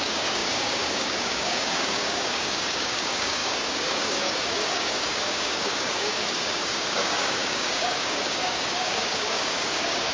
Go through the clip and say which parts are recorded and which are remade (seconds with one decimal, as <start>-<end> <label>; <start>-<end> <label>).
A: 0.0-10.1 remade